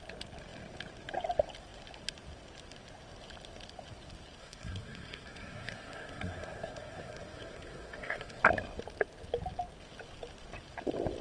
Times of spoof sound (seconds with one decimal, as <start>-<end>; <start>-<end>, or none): 4.4-8.4